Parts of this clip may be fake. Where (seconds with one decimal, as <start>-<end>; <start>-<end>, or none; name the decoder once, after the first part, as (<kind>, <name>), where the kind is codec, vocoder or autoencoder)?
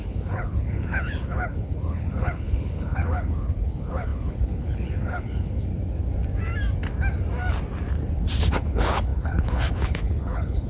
0.0-5.7 (codec, HILCodec); 8.4-10.7